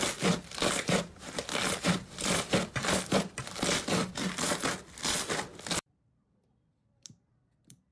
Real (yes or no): no